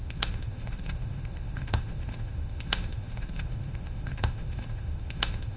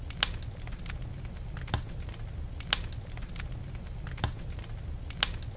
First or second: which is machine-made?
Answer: first